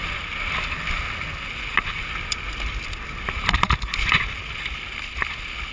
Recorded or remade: recorded